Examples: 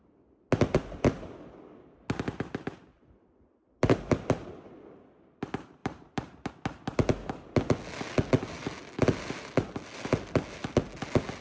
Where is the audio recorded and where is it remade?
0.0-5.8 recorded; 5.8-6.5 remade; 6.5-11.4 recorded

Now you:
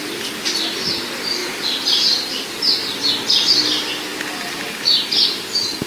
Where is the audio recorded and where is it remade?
0.0-1.4 recorded; 1.4-3.1 remade; 3.1-5.9 recorded

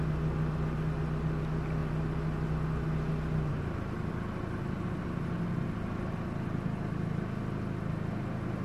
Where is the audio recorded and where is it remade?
0.0-3.5 recorded; 3.5-4.1 remade; 4.1-8.6 recorded

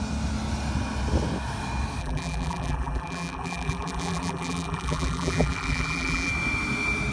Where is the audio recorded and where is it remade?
0.0-2.0 recorded; 2.0-6.3 remade; 6.3-7.1 recorded

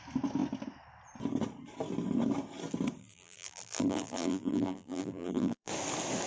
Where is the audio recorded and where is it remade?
0.0-3.0 recorded; 3.0-5.7 remade; 5.7-6.3 recorded

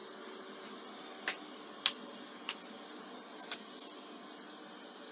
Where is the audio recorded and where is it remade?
0.0-5.1 recorded